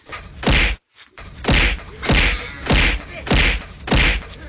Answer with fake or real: real